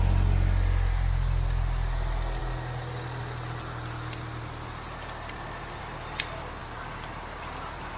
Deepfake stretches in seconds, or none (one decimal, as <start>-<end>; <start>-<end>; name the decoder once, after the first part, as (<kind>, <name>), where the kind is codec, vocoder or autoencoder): none